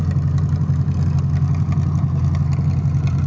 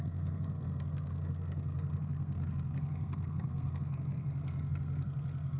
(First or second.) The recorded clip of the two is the first